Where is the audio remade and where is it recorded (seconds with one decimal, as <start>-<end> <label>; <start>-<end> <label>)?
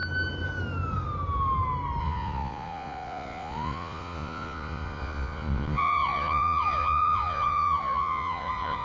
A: 0.0-2.0 recorded; 2.0-8.8 remade